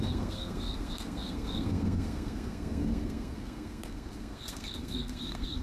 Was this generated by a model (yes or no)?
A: yes